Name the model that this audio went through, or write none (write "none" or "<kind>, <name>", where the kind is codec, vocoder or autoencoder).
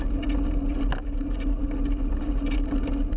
none